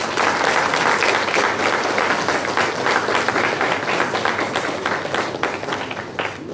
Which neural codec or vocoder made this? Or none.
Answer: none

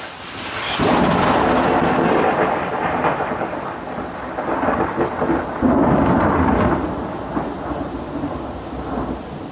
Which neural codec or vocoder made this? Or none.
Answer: none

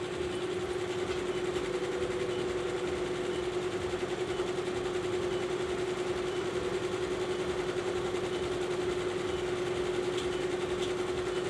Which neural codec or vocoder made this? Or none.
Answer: none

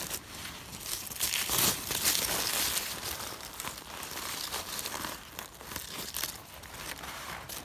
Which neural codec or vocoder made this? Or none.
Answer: none